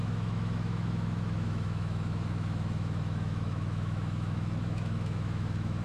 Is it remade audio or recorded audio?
remade